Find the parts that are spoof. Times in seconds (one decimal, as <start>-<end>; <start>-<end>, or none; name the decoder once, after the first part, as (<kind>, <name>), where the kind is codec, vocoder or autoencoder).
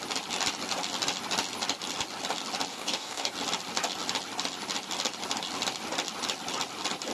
2.7-3.3 (codec, DAC)